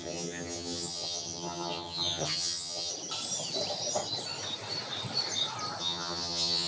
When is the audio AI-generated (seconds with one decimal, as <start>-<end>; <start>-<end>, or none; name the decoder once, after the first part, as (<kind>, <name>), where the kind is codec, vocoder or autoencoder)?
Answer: 0.0-2.9 (vocoder, HiFi-GAN); 5.8-6.7